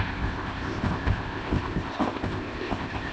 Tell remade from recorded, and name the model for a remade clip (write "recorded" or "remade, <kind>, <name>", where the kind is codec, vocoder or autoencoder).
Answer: remade, codec, ZipCodec